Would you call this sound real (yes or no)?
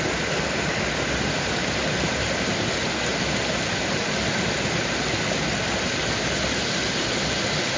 yes